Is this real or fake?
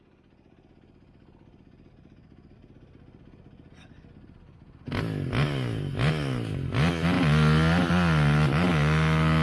real